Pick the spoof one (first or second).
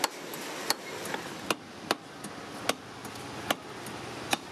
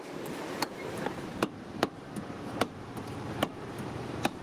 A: second